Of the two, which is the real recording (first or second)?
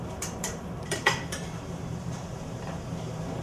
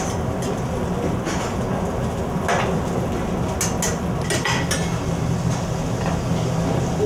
second